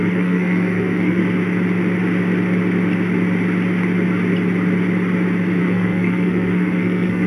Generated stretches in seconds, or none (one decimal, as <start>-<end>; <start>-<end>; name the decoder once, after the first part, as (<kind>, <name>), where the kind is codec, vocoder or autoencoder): 0.0-1.2 (codec, SNAC); 5.6-7.3